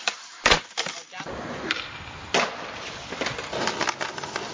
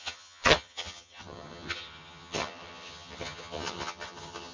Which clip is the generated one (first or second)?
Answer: second